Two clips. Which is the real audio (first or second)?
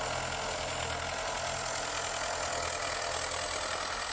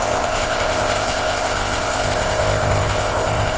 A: first